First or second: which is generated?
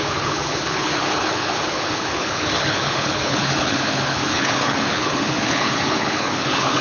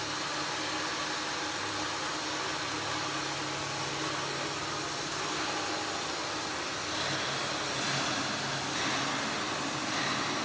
first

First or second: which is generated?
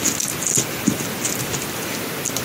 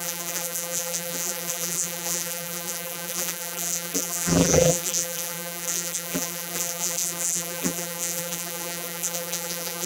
second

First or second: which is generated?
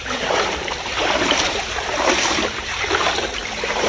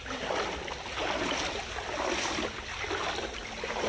first